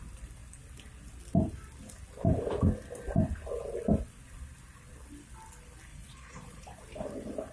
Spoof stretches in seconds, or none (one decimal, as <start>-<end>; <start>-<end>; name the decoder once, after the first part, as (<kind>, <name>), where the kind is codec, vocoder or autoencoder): 5.9-6.8 (vocoder, Vocos)